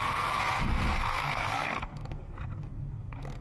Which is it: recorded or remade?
remade